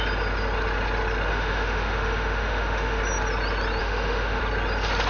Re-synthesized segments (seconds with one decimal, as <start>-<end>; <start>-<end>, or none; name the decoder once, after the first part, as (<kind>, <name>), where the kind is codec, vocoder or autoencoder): 1.3-3.0 (autoencoder, DAC-VAE); 3.8-4.4